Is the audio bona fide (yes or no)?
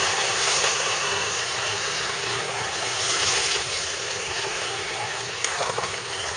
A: no